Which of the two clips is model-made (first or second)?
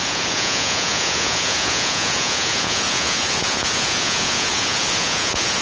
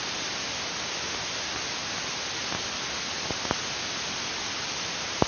first